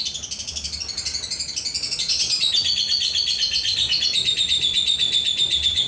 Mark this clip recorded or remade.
recorded